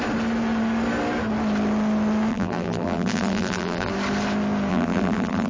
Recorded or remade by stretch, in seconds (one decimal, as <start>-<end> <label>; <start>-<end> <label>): 0.0-2.3 recorded; 2.3-3.9 remade; 3.9-4.7 recorded; 4.7-5.5 remade